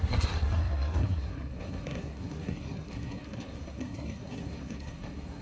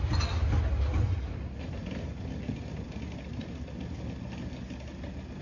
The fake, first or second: first